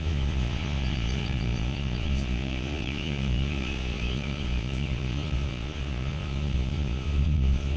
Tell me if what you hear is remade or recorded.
remade